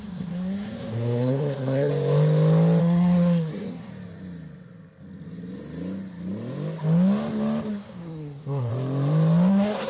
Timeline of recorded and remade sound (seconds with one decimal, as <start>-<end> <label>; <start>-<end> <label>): 0.0-1.9 remade; 1.9-2.8 recorded; 2.8-3.9 remade; 3.9-7.7 recorded; 7.7-8.7 remade; 8.7-9.5 recorded; 9.5-9.9 remade